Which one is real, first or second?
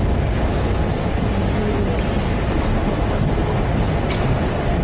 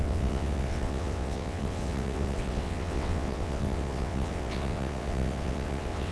first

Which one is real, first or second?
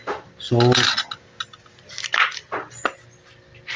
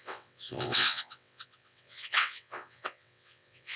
first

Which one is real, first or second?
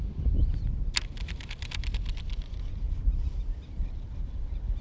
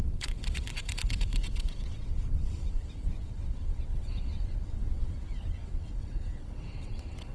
first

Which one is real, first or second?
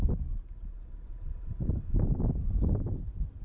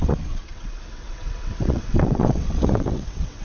first